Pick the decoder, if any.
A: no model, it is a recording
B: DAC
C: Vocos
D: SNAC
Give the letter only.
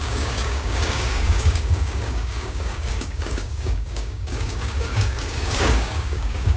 B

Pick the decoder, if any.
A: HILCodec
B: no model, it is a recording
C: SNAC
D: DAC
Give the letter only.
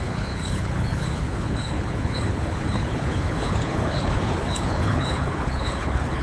A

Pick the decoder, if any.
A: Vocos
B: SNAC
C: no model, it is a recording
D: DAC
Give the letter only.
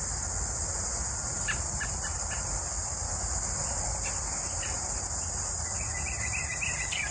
C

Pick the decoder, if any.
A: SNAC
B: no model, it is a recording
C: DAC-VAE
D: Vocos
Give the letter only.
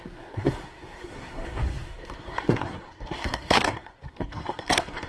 A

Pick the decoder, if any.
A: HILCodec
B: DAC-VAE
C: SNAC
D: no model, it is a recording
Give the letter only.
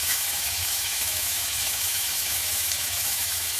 B